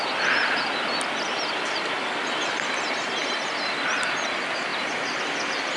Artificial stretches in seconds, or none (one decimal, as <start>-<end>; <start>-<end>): 4.7-5.2